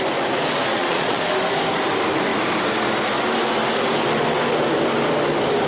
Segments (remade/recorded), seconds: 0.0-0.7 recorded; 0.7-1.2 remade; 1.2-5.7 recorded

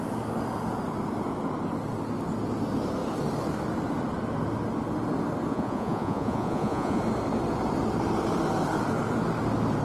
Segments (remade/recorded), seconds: 0.0-5.5 recorded; 5.5-7.0 remade; 7.0-9.8 recorded

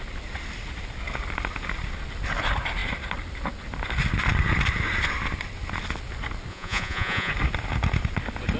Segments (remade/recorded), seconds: 0.0-6.5 recorded; 6.5-7.3 remade; 7.3-8.6 recorded

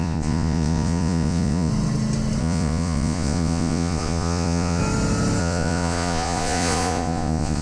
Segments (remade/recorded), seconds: 0.0-1.7 remade; 1.7-2.4 recorded; 2.4-4.8 remade; 4.8-5.4 recorded; 5.4-7.6 remade